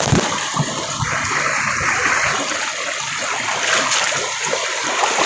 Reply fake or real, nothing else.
real